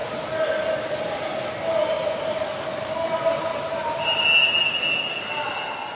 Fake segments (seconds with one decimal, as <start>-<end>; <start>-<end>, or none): none